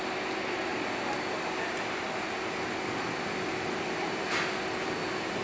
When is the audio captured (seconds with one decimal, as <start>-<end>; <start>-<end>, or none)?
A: 0.0-5.4